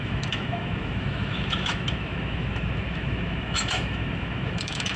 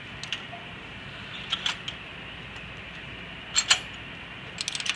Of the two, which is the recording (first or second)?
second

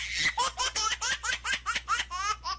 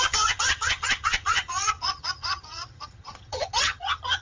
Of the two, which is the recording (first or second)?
first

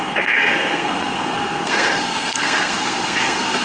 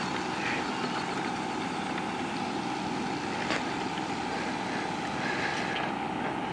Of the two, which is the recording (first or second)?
second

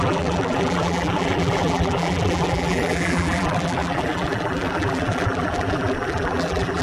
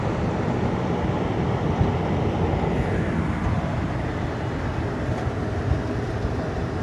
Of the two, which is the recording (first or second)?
second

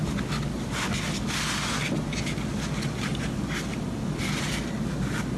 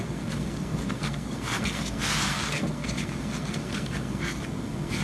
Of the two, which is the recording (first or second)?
first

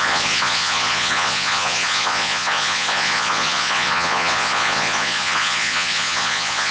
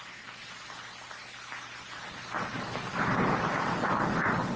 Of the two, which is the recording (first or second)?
second